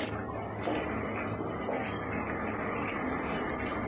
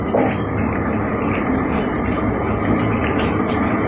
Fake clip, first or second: second